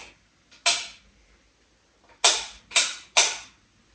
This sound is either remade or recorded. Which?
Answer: recorded